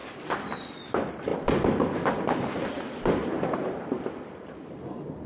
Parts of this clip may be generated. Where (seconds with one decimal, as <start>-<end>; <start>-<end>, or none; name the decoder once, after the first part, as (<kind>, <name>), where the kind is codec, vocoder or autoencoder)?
0.0-0.7 (vocoder, BigVGAN v2); 1.3-4.5